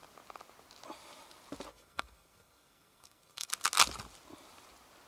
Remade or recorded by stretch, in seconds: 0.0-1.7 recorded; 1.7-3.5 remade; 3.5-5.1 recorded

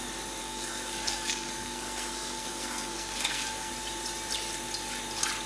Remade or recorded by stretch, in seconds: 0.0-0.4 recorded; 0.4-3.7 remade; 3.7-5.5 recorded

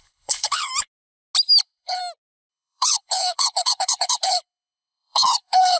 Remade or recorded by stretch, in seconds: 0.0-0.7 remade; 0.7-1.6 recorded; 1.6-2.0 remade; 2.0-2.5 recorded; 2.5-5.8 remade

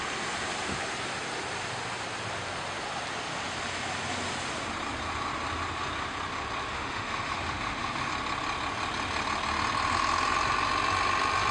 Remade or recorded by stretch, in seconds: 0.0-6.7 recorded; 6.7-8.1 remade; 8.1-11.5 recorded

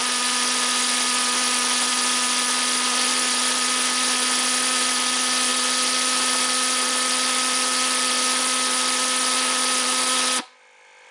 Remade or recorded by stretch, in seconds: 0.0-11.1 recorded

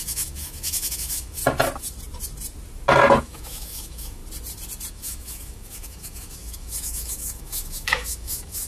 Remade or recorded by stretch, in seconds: 0.0-1.4 remade; 1.4-3.2 recorded; 3.2-4.2 remade; 4.2-4.9 recorded; 4.9-8.7 remade